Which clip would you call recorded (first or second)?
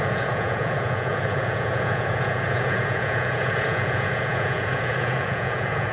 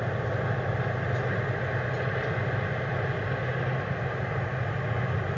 second